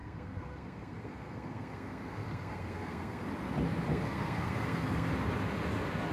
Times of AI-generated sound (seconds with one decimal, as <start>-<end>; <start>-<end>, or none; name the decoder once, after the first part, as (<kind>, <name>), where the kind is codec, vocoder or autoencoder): 0.0-3.3 (codec, SNAC); 3.9-5.1